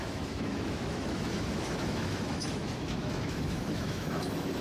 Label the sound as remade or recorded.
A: remade